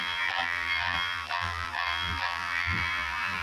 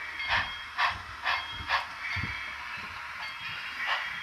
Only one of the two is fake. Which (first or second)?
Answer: first